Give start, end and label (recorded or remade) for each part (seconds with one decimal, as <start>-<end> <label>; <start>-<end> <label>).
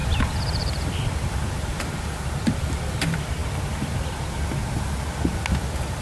0.0-6.0 recorded